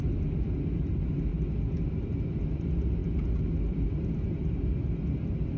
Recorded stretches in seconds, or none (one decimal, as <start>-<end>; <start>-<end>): 0.0-5.6